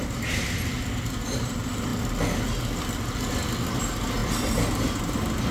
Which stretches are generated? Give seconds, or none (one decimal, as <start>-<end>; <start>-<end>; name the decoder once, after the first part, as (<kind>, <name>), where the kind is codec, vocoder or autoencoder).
none